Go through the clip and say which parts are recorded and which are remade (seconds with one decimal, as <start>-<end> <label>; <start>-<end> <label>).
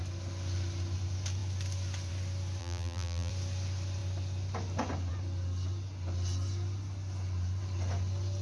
0.0-2.6 recorded; 2.6-3.3 remade; 3.3-8.4 recorded